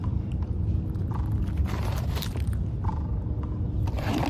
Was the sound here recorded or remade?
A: recorded